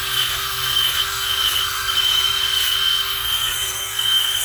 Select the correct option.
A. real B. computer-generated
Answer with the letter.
B